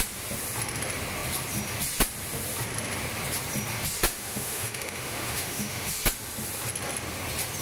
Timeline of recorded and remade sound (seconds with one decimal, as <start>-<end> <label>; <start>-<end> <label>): 0.0-4.1 recorded; 4.1-5.9 remade; 5.9-7.6 recorded